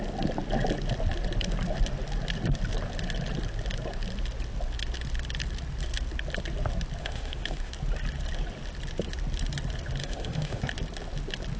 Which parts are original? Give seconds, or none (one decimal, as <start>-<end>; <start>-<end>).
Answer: 0.0-7.0; 7.7-10.0; 10.6-11.6